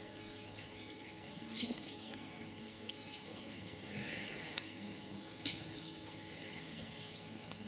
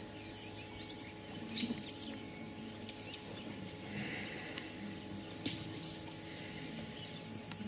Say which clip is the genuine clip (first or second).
second